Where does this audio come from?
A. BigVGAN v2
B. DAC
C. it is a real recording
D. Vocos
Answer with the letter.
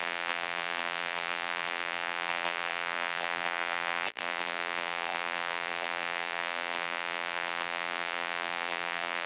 A